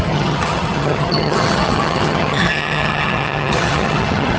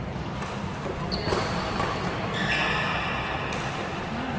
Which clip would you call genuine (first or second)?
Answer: second